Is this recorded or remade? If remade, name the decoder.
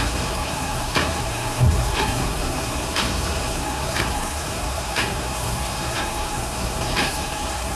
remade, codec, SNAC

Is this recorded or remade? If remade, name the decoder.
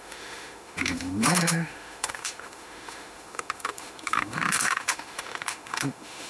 remade, autoencoder, DAC-VAE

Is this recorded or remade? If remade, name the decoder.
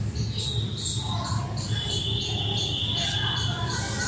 recorded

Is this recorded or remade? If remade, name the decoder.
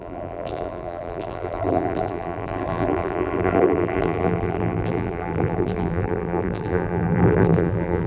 remade, vocoder, BigVGAN v2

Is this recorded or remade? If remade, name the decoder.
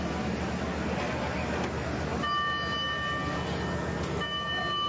recorded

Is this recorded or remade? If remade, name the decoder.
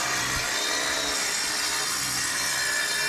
recorded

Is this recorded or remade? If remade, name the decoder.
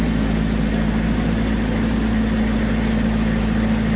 recorded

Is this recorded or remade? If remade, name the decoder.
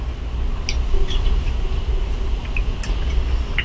recorded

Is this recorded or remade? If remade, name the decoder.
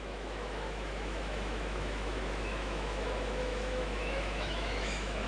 remade, autoencoder, DAC-VAE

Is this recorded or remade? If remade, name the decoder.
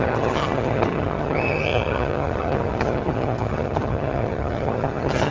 remade, vocoder, HiFi-GAN